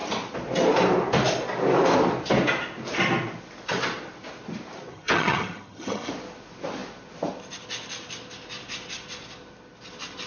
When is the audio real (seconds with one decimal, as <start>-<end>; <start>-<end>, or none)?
0.0-4.9; 6.1-10.3